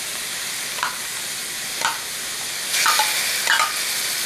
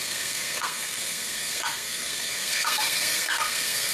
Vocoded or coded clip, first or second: second